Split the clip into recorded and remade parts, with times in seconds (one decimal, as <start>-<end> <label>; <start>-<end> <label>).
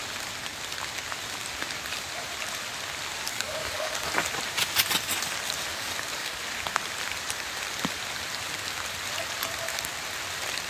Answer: 0.0-3.3 recorded; 3.3-4.1 remade; 4.1-5.7 recorded; 5.7-6.4 remade; 6.4-10.7 recorded